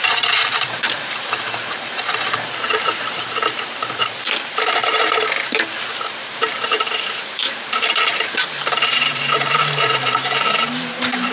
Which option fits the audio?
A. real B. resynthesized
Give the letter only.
B